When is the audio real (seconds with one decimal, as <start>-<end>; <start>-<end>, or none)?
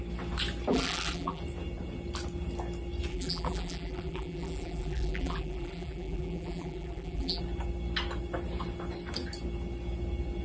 0.0-0.7; 1.4-3.1; 7.4-10.4